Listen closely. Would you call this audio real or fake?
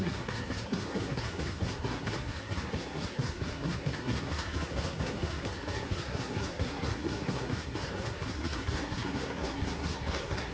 fake